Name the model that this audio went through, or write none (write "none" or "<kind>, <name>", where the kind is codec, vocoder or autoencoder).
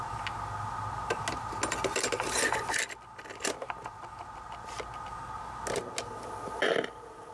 none